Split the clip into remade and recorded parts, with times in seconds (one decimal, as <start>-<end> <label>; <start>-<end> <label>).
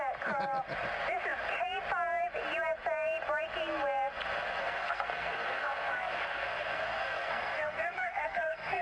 0.0-4.6 recorded; 4.6-8.8 remade